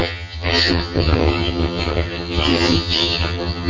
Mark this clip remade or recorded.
remade